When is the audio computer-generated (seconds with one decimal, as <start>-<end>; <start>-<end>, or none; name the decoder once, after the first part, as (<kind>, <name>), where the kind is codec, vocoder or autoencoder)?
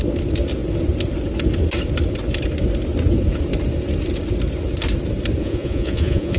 5.4-6.4 (vocoder, Vocos)